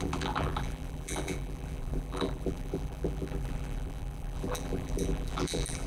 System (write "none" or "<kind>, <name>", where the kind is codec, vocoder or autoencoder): vocoder, BigVGAN v2